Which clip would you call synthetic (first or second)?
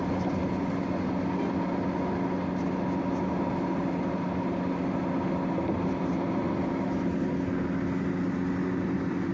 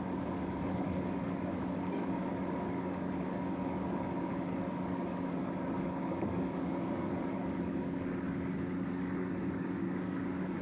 second